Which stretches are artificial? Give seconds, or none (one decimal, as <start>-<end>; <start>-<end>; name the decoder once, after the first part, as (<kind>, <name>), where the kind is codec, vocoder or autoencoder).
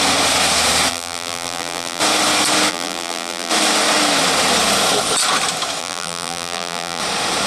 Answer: 0.9-2.0 (vocoder, BigVGAN v2); 2.7-3.5; 5.8-7.0